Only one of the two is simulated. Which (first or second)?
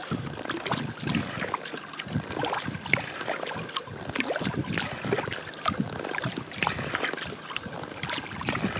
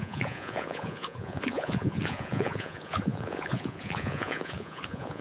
second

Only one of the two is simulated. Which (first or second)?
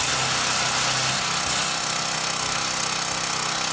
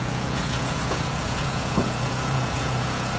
second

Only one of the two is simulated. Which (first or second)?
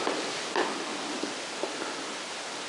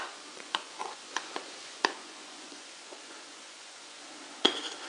second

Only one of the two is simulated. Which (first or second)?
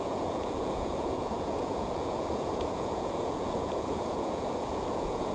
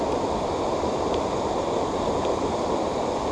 first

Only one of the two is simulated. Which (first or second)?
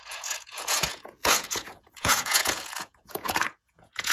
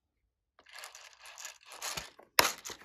first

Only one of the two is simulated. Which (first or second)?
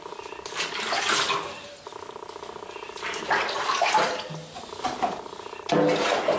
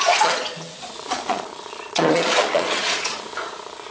second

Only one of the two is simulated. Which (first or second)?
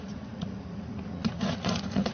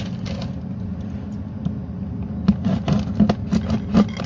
first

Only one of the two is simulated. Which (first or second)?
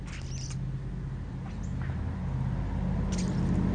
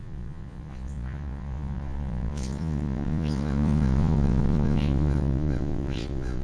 second